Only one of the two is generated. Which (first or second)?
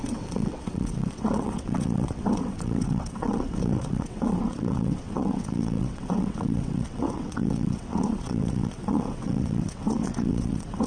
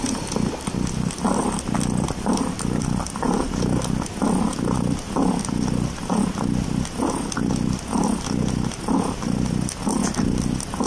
first